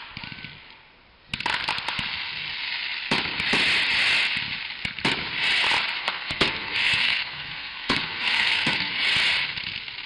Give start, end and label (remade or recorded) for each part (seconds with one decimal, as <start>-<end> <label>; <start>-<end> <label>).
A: 0.0-6.0 recorded; 6.0-8.9 remade; 8.9-10.1 recorded